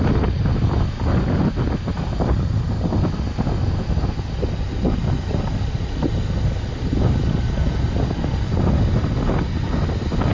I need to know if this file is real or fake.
real